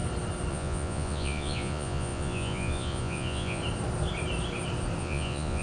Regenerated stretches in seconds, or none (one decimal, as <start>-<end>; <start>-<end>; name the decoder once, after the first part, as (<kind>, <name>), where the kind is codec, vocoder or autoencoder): 0.5-3.6 (vocoder, Vocos); 5.0-5.6